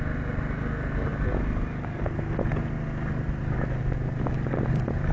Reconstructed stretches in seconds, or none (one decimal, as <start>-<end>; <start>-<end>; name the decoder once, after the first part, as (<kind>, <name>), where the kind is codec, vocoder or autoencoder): none